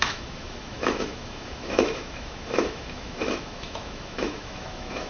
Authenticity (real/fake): fake